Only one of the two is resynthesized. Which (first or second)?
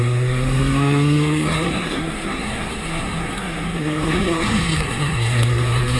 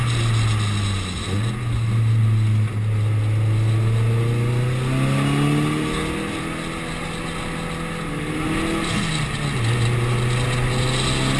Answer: first